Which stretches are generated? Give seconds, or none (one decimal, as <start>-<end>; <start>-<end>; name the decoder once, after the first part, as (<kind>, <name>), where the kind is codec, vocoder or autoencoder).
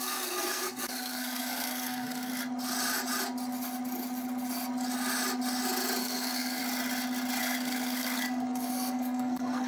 0.0-2.3 (codec, SNAC); 6.0-6.6; 7.4-9.7